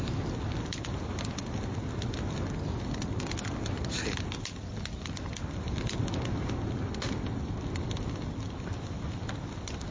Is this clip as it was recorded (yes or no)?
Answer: yes